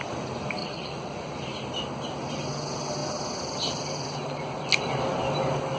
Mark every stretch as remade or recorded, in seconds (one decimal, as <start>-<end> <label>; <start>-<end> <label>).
0.0-0.6 recorded; 0.6-1.3 remade; 1.3-5.8 recorded